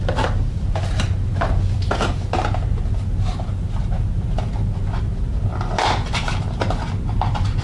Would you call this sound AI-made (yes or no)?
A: no